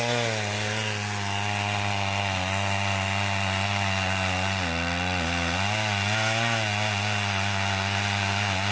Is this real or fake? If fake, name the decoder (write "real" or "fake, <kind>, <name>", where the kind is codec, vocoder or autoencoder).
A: real